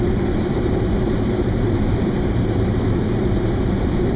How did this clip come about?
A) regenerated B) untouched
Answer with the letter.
A